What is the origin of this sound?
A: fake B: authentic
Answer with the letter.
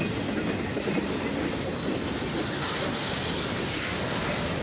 B